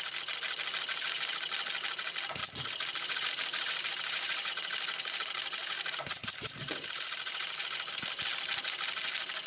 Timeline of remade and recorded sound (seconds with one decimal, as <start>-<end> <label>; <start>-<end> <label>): 0.0-2.4 recorded; 2.4-4.5 remade; 4.5-5.6 recorded; 5.6-8.2 remade; 8.2-9.5 recorded